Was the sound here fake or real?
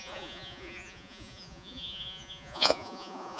fake